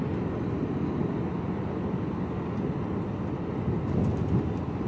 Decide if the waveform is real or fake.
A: real